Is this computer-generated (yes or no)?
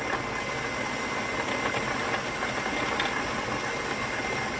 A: no